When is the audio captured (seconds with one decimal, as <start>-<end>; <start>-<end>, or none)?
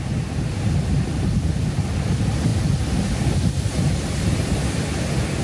0.0-5.4